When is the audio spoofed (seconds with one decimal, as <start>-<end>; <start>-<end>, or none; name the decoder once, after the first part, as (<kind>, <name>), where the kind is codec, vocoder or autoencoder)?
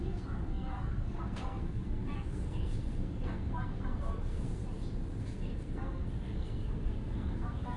0.0-4.6 (codec, SNAC); 5.2-7.8